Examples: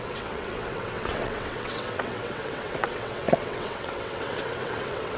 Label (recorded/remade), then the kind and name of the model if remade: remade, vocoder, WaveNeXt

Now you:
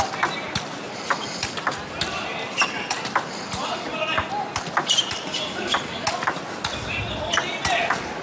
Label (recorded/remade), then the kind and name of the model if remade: recorded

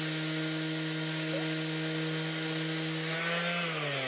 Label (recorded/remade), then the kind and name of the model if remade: recorded